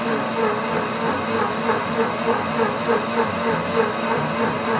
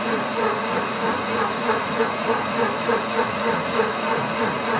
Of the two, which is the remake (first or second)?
second